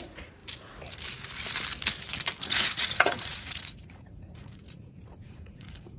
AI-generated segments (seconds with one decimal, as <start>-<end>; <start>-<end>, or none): 0.0-0.4; 2.4-6.0